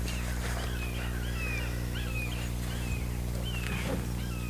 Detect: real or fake real